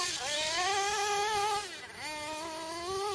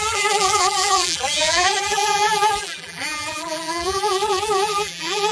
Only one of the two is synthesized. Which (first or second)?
second